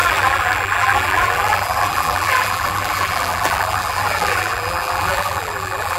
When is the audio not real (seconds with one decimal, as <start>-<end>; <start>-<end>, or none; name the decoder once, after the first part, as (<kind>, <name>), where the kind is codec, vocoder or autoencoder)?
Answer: 0.0-6.0 (vocoder, BigVGAN v2)